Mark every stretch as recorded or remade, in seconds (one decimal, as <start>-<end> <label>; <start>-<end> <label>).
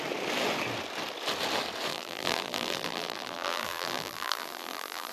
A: 0.0-1.9 recorded; 1.9-5.1 remade